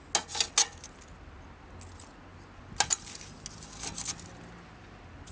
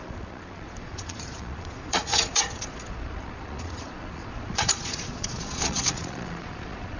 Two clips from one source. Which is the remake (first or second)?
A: second